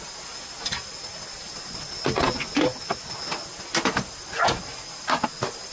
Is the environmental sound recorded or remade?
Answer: recorded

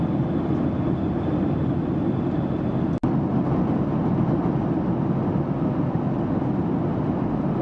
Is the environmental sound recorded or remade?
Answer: recorded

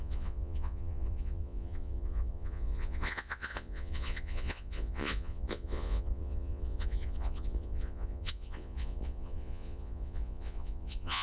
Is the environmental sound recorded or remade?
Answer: remade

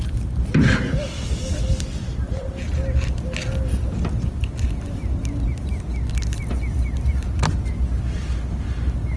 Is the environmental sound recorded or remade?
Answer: recorded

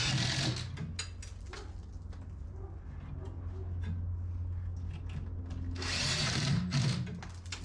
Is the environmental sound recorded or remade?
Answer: recorded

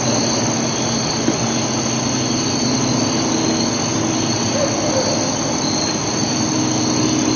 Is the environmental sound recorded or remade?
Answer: recorded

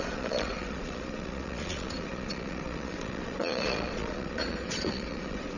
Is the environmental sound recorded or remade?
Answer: remade